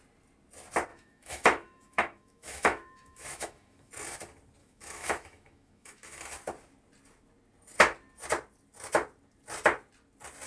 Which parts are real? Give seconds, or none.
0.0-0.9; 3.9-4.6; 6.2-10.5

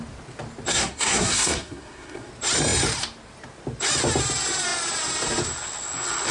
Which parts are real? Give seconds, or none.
0.0-0.7; 2.3-6.3

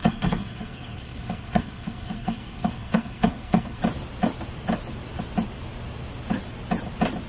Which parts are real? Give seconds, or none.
3.8-7.3

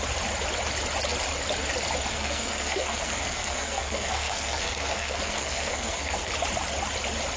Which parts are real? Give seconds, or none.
0.0-2.1; 6.3-7.4